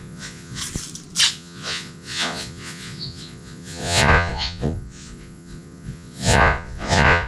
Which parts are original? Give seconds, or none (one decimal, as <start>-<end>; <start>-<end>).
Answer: 0.6-1.3